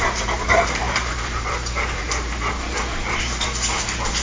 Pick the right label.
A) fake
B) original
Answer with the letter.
A